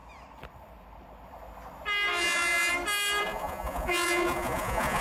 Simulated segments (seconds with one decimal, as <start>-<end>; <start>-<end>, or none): 2.2-2.7; 3.2-5.0